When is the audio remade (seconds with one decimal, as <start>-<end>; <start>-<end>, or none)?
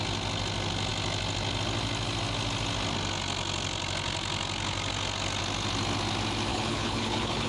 6.5-7.5